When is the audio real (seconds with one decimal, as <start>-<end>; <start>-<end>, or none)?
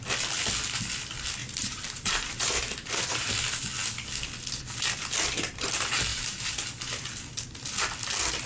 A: 0.0-1.4; 3.3-6.1; 6.7-8.5